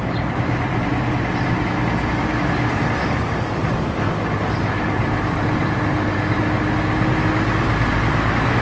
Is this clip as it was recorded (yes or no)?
yes